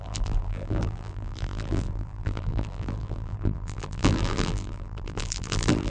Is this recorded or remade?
remade